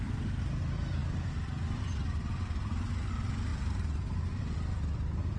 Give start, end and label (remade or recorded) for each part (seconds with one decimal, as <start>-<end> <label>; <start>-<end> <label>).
0.0-1.0 recorded; 1.0-3.1 remade; 3.1-3.5 recorded; 3.5-4.8 remade; 4.8-5.4 recorded